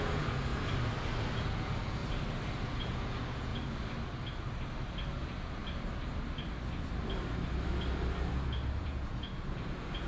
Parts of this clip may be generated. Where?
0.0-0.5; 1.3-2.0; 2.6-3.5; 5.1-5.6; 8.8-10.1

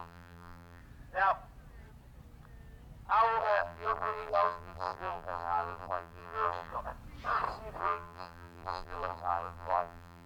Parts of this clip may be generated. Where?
0.0-0.8; 3.4-6.7; 7.8-10.3

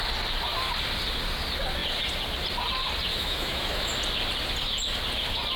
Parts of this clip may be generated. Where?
3.1-3.9

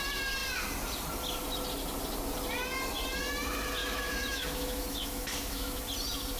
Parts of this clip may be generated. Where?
3.8-5.8